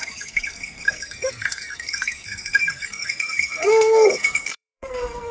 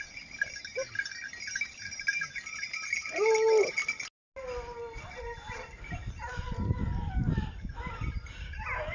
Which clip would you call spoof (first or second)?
first